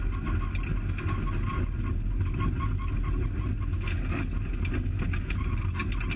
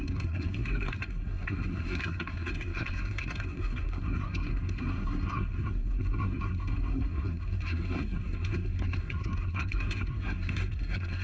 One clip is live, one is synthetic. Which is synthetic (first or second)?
second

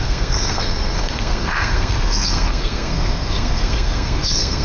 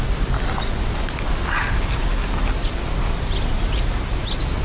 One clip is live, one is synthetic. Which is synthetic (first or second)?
first